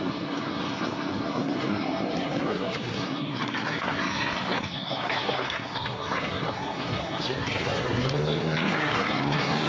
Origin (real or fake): fake